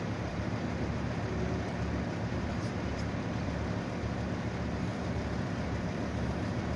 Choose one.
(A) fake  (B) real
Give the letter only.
A